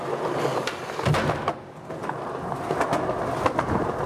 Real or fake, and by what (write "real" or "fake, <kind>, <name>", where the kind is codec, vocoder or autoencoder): real